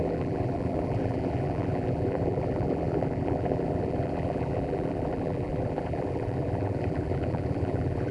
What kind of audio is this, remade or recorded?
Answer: remade